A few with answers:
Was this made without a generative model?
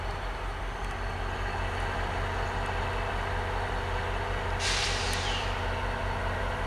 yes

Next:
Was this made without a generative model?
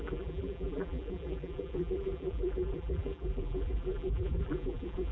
no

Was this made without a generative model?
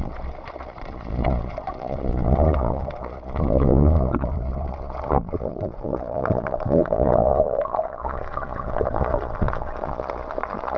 no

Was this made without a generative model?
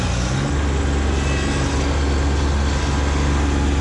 yes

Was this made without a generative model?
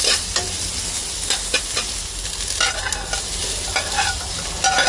yes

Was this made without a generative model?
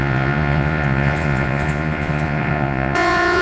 no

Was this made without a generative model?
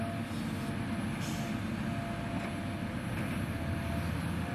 yes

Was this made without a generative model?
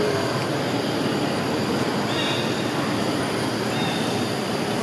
yes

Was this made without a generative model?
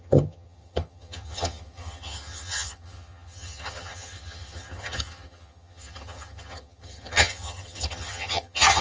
no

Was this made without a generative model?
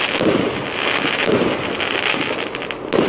yes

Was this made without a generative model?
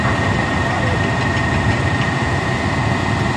yes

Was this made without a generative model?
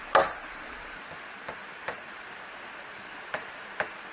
yes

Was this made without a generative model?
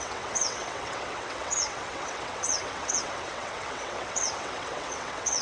no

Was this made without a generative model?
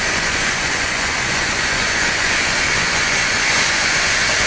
no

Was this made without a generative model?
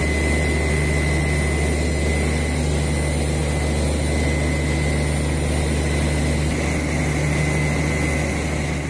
yes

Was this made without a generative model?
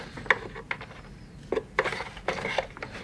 yes